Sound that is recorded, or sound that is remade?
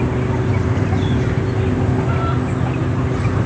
recorded